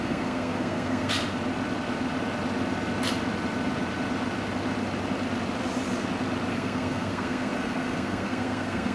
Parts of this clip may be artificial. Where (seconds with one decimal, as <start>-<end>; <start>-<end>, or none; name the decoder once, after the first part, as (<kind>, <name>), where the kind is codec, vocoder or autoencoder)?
0.0-1.2 (codec, SNAC); 6.5-8.9